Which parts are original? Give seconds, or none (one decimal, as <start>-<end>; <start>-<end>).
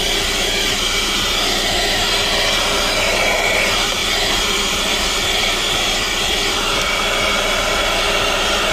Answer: 0.0-4.0; 7.0-8.7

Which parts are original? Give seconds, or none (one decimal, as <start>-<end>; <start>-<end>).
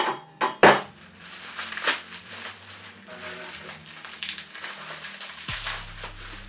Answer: 0.0-0.6; 2.3-6.5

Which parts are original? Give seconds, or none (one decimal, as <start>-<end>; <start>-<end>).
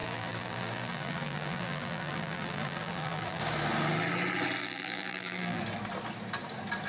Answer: 3.4-4.6; 5.6-6.9